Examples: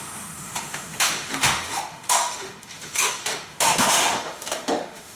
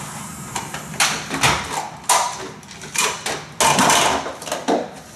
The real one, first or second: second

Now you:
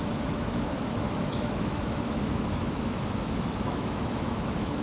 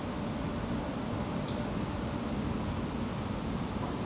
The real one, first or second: second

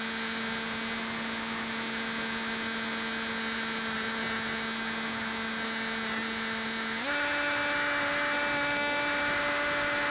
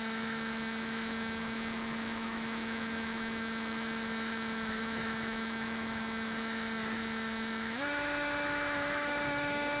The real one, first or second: first